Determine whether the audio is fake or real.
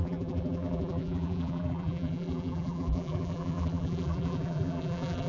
fake